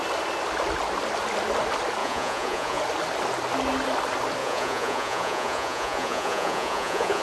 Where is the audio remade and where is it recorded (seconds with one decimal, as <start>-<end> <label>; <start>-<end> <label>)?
0.0-2.0 recorded; 2.0-2.8 remade; 2.8-4.4 recorded; 4.4-7.2 remade

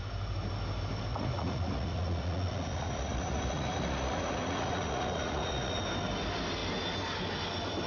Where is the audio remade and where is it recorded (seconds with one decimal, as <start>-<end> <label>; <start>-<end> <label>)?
0.0-1.1 recorded; 1.1-5.8 remade; 5.8-7.9 recorded

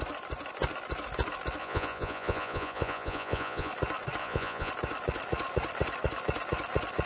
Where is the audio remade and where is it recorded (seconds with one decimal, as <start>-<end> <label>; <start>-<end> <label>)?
0.0-1.6 recorded; 1.6-3.7 remade; 3.7-4.2 recorded; 4.2-4.7 remade; 4.7-7.1 recorded